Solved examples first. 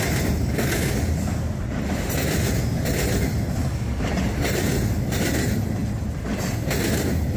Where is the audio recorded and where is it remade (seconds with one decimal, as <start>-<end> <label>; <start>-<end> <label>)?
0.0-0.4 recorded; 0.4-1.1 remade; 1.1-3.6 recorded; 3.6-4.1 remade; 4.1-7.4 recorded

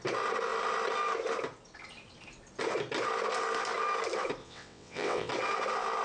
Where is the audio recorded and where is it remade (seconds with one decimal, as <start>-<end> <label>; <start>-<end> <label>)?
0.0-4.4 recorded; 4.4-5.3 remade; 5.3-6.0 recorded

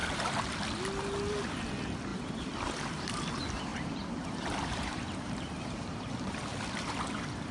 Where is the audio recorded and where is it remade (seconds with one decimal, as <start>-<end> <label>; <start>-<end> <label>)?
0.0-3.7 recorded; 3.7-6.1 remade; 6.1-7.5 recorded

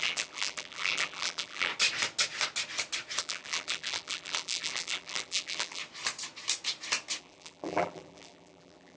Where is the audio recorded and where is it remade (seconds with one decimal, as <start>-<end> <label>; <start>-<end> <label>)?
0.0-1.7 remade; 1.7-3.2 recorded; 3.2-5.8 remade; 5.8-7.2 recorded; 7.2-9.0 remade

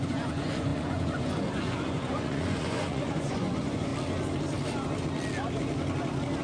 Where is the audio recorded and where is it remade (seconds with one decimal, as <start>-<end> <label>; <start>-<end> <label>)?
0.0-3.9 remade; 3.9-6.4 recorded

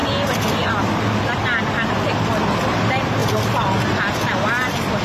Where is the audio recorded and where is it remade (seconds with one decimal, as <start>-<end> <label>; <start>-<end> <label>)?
0.0-5.0 recorded

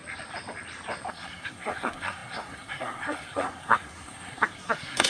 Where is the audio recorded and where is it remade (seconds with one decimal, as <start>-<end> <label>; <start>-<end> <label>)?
0.0-1.1 recorded; 1.1-5.1 remade

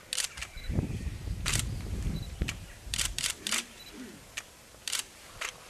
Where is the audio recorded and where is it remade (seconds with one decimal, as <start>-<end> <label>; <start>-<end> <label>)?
0.0-0.4 recorded; 0.4-3.8 remade; 3.8-4.8 recorded; 4.8-5.3 remade; 5.3-5.7 recorded